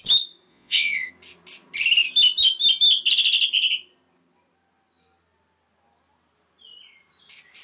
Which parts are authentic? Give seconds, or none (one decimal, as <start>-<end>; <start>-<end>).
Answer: 0.0-0.5; 1.1-7.6